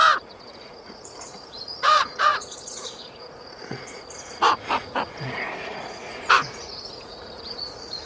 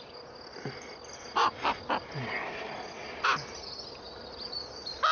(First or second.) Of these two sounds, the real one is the second